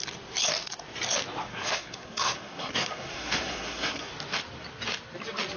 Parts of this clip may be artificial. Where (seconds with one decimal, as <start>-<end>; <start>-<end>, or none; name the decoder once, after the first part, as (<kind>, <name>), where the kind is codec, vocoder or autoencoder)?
1.5-4.1 (codec, SNAC)